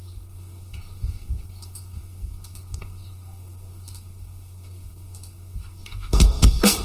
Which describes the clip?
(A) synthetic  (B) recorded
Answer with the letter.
A